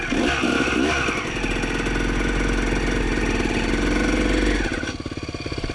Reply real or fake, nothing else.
real